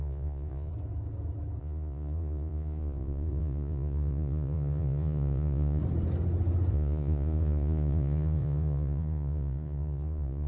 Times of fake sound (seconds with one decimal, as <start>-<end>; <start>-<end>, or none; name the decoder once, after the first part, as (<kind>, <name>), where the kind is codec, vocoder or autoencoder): 0.0-0.7 (vocoder, Vocos); 1.6-5.8; 6.7-10.5